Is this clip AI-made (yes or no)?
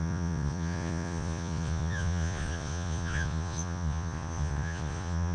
yes